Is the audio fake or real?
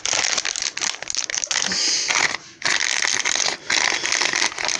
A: real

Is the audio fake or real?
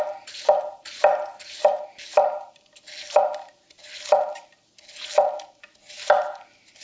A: real